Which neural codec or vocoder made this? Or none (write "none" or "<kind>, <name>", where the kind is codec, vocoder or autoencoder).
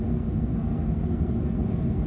codec, SNAC